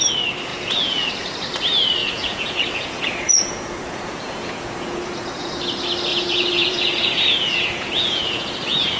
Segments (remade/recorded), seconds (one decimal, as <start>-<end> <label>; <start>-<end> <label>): 0.0-0.5 recorded; 0.5-1.1 remade; 1.1-2.0 recorded; 2.0-5.6 remade; 5.6-6.1 recorded; 6.1-9.0 remade